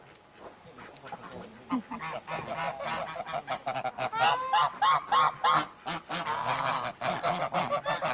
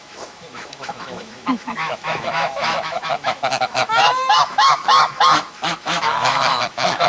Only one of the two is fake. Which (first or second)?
second